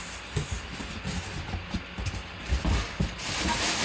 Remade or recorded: recorded